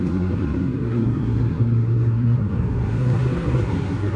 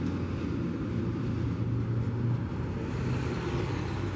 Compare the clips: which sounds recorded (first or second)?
second